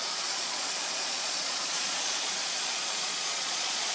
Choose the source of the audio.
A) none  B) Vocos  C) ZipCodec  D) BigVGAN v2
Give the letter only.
B